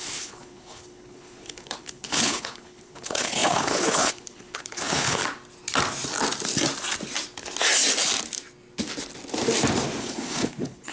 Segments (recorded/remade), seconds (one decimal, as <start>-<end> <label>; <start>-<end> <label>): 0.0-5.2 remade; 5.2-10.0 recorded; 10.0-10.9 remade